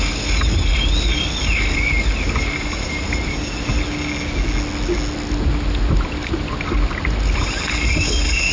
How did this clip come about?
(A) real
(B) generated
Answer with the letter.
A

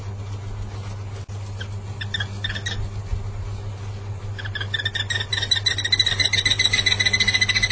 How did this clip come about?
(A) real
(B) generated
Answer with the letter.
A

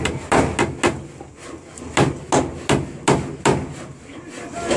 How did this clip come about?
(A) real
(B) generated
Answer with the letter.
A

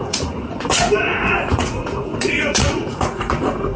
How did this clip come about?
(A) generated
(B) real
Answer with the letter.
A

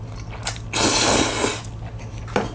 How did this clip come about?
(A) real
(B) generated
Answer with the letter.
A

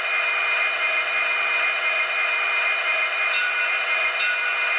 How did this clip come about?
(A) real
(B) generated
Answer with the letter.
A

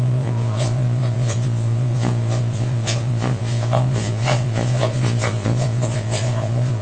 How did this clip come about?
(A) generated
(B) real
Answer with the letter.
A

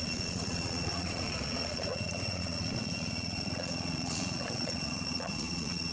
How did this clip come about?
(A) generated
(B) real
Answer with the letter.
A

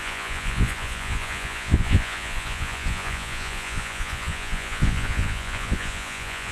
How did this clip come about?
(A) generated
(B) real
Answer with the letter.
A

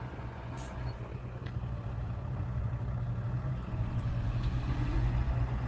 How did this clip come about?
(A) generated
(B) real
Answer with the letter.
A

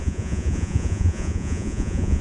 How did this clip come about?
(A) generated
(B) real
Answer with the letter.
A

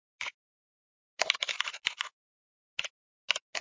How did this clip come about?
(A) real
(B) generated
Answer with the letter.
A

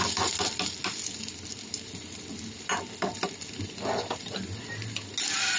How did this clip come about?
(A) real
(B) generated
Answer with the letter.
A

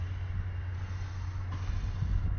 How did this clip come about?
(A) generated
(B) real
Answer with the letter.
B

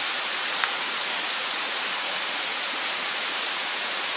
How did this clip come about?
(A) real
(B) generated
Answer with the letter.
B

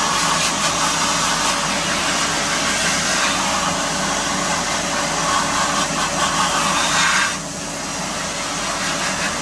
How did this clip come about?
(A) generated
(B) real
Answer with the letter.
B